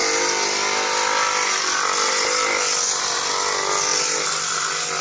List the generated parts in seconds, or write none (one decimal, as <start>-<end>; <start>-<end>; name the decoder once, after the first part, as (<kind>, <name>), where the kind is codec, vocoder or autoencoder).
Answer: none